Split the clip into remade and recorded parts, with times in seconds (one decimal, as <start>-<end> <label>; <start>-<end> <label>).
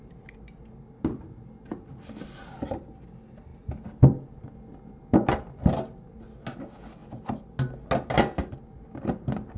0.0-9.6 recorded